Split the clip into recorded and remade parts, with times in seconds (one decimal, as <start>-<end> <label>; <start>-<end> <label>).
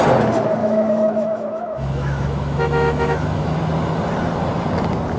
0.0-0.6 recorded; 0.6-3.6 remade; 3.6-5.2 recorded